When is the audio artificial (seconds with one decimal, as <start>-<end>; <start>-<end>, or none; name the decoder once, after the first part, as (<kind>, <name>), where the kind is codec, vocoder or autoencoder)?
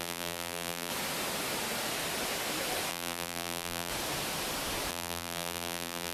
0.0-0.9 (vocoder, BigVGAN v2); 2.9-3.9; 4.9-6.1